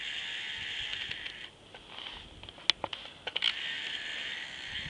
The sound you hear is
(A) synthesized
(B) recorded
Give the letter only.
B